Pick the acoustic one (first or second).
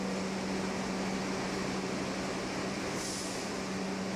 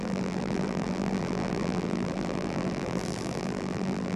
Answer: first